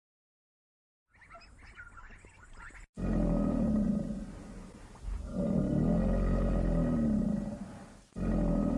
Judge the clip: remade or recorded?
recorded